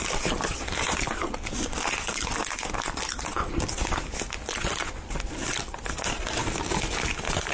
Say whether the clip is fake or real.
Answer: real